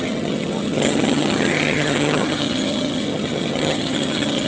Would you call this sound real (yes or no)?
no